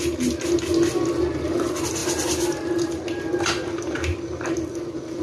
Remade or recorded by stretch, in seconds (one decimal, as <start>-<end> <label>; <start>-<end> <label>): 0.0-5.2 recorded